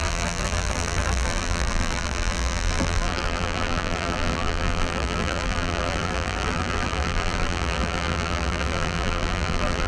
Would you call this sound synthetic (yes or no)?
yes